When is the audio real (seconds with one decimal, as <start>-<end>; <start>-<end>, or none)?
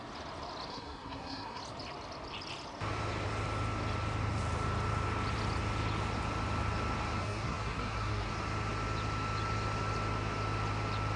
0.0-0.7; 1.6-7.2; 8.3-11.2